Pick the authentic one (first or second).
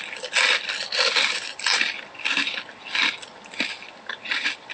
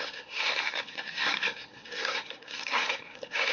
first